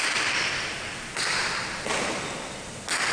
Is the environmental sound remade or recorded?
recorded